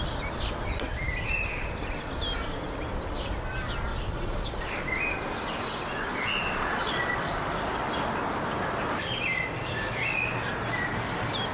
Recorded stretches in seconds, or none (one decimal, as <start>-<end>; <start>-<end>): 0.0-3.9; 4.6-6.1; 7.3-11.5